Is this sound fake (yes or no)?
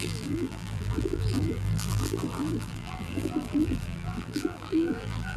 yes